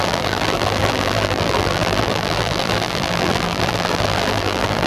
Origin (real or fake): fake